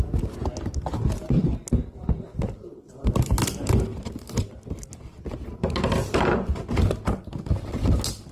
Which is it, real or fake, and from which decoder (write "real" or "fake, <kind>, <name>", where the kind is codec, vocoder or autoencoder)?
real